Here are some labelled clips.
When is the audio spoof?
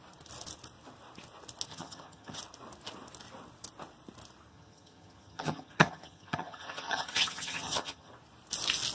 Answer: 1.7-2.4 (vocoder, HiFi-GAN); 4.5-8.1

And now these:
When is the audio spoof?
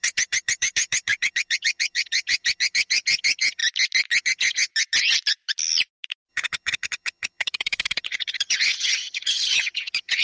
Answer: 0.0-3.6 (vocoder, HiFi-GAN); 4.2-4.7; 6.3-10.2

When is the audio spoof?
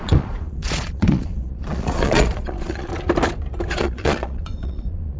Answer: 0.0-2.9 (vocoder, Vocos); 3.7-5.2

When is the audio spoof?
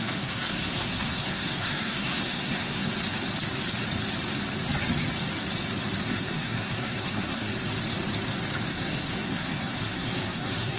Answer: 0.0-2.9 (codec, SNAC); 6.0-7.5; 8.7-10.8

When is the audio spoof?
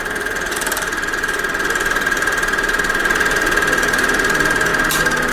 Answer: 0.0-4.7 (vocoder, BigVGAN v2)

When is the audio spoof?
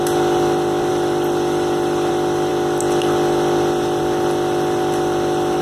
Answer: 0.9-2.1 (vocoder, BigVGAN v2)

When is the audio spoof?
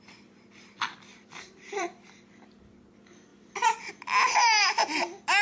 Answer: 1.1-2.6 (vocoder, BigVGAN v2); 3.3-3.9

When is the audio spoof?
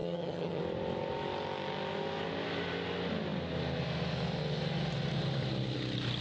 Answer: 0.0-0.6 (vocoder, HiFi-GAN)